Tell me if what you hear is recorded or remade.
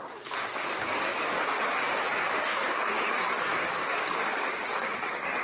remade